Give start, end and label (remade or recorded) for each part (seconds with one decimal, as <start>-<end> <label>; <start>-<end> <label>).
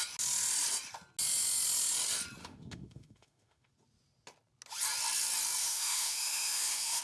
0.0-2.4 recorded; 2.4-3.7 remade; 3.7-5.6 recorded; 5.6-7.0 remade